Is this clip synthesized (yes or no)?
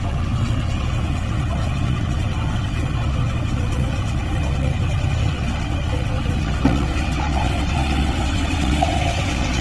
yes